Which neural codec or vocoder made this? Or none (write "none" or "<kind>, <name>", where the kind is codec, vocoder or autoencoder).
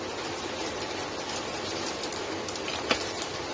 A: vocoder, BigVGAN v2